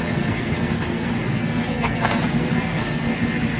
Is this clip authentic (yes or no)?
no